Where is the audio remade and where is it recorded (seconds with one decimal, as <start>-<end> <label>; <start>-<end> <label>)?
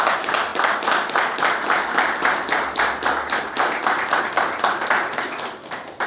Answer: 0.0-6.1 recorded